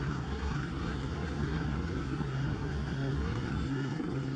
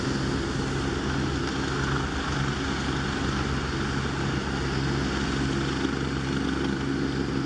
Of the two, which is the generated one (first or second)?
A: first